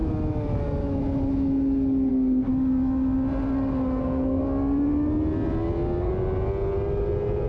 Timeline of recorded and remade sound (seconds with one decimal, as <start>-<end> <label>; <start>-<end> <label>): 0.0-2.1 recorded; 2.1-2.5 remade; 2.5-4.0 recorded; 4.0-4.4 remade; 4.4-7.5 recorded